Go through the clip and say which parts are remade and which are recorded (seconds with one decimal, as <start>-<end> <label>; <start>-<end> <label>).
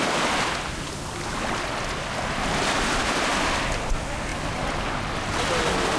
0.0-6.0 recorded